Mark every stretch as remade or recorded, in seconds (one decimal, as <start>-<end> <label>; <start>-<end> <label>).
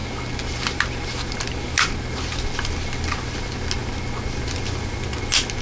0.0-5.6 recorded